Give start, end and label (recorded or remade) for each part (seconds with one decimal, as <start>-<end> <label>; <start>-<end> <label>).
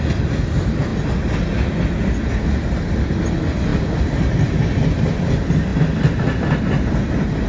0.0-7.5 recorded